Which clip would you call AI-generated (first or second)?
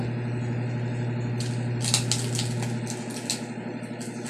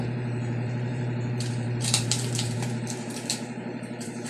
second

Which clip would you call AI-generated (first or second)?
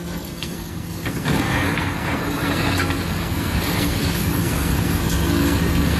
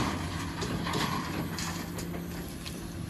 first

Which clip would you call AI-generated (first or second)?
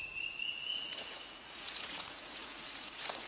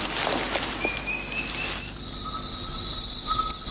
first